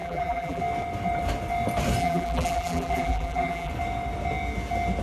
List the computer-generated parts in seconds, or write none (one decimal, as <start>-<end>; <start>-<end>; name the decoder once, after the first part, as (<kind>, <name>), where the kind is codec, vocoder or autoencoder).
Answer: 0.0-0.6 (vocoder, BigVGAN v2); 2.0-3.7